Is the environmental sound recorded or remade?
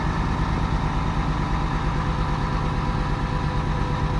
recorded